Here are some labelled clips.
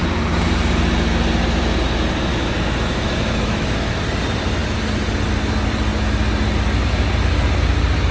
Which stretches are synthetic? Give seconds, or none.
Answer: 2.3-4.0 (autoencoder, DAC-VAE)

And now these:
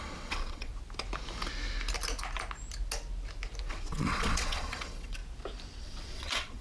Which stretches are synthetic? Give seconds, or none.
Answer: 0.0-0.7 (vocoder, WaveNeXt); 3.7-5.2; 5.8-6.6

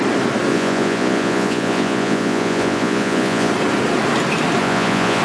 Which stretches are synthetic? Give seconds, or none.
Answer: 0.5-3.5 (vocoder, Vocos); 4.6-5.2

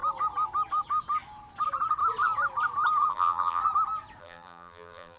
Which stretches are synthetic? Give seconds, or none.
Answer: 3.1-3.6 (vocoder, BigVGAN v2); 4.2-5.2